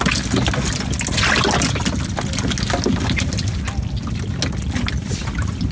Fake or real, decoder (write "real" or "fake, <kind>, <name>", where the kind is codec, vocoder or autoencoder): real